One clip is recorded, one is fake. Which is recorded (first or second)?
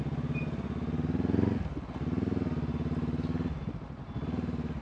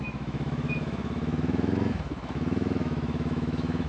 first